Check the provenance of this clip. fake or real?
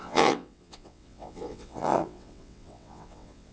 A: fake